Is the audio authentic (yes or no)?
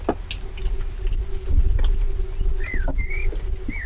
yes